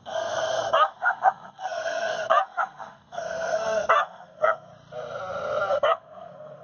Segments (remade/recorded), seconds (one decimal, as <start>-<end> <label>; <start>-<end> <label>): 0.0-4.7 remade; 4.7-5.7 recorded; 5.7-6.6 remade